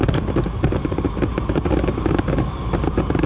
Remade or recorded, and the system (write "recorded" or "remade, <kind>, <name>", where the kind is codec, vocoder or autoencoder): recorded